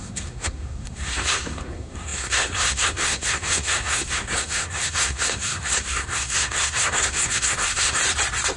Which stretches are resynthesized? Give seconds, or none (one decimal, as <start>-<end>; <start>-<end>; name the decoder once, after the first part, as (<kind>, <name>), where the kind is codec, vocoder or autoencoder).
0.0-8.0 (codec, SNAC)